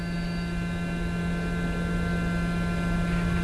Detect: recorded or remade recorded